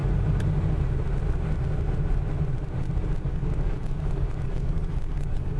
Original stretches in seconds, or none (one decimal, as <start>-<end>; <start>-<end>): 0.0-3.3